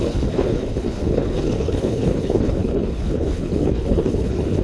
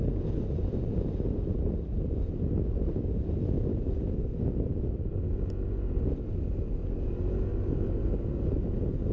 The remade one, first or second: first